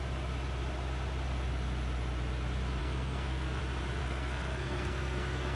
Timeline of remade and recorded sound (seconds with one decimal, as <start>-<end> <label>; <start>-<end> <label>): 0.0-2.8 recorded; 2.8-3.6 remade; 3.6-4.0 recorded; 4.0-5.6 remade